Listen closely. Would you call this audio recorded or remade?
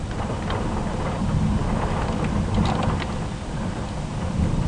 remade